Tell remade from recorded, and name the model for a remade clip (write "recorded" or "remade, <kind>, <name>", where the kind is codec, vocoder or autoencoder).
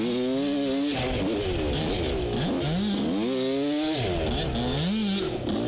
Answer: recorded